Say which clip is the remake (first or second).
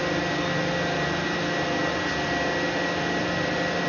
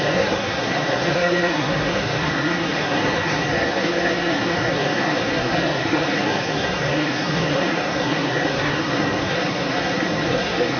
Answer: second